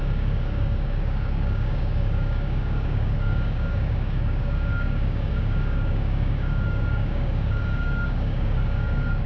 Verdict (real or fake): fake